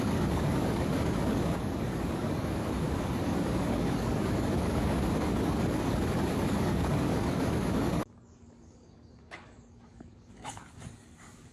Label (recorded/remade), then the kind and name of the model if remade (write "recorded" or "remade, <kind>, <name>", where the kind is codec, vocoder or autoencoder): remade, codec, DAC